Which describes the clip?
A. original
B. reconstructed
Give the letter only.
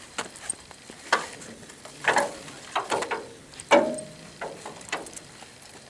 A